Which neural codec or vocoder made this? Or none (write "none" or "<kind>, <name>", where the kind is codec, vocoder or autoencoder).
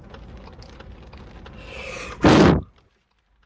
none